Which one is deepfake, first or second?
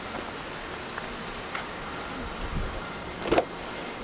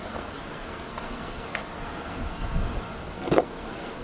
second